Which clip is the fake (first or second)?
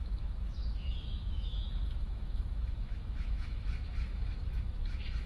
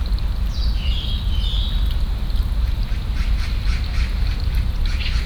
first